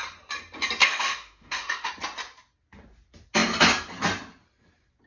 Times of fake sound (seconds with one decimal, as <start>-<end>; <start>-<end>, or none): 0.8-1.9